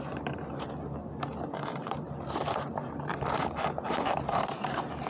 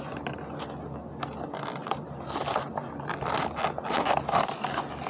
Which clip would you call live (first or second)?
second